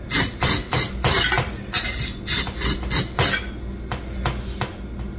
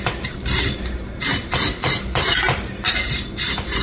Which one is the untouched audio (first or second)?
first